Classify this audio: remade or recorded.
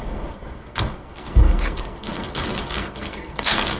remade